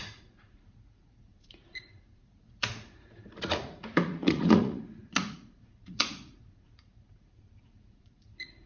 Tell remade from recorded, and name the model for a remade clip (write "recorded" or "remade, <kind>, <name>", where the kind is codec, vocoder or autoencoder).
remade, vocoder, Vocos